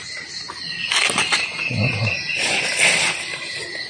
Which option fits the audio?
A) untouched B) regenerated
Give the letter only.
A